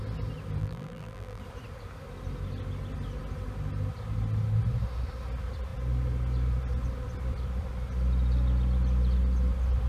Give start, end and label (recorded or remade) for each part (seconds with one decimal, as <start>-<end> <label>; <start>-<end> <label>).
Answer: 0.0-0.6 recorded; 0.6-1.4 remade; 1.4-9.9 recorded